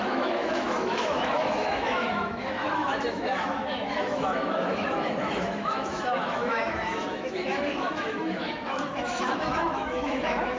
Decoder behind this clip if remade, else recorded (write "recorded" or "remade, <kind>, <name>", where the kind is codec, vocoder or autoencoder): remade, autoencoder, DAC-VAE